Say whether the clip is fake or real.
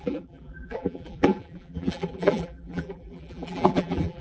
fake